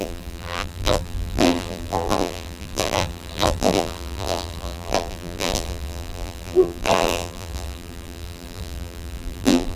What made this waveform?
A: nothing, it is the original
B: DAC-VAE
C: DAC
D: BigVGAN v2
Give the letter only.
D